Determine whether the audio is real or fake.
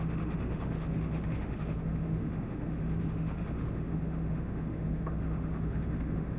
fake